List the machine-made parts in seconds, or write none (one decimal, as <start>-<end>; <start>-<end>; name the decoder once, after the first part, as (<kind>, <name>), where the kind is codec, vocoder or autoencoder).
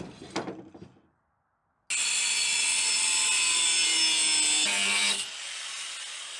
none